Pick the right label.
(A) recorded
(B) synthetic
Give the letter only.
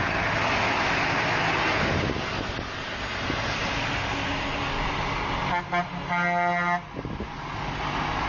A